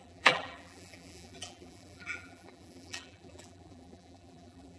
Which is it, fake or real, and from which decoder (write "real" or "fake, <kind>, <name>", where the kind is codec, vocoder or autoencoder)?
fake, vocoder, BigVGAN v2